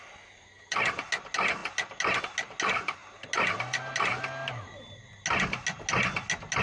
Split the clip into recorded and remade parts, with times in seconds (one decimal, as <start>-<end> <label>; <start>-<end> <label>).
0.0-6.6 recorded